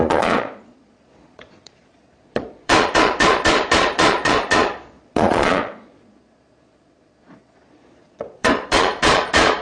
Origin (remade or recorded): remade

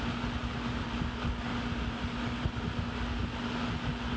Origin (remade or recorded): recorded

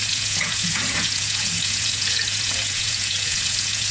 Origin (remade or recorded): remade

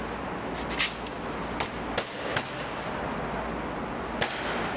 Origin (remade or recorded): recorded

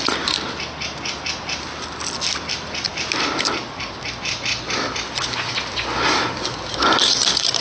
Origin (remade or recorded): recorded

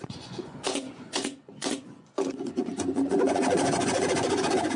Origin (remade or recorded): remade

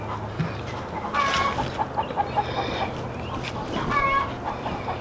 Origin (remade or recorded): recorded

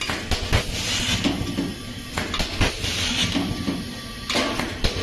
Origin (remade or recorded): recorded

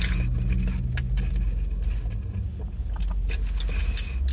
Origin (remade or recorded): recorded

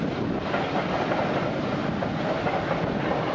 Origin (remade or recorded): recorded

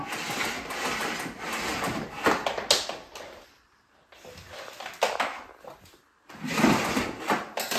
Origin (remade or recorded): recorded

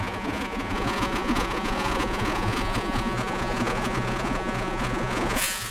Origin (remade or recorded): remade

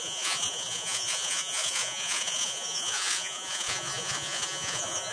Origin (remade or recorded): remade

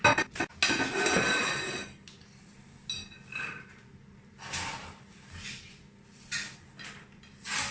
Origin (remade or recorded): recorded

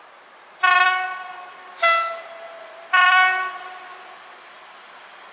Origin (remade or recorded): recorded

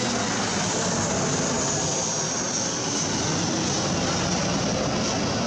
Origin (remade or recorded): recorded